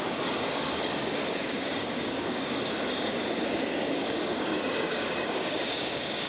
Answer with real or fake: fake